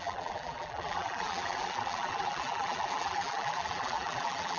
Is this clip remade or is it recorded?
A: remade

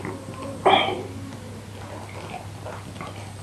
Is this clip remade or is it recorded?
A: recorded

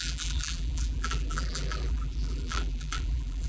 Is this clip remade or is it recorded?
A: remade